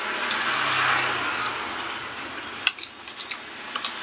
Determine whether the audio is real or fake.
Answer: real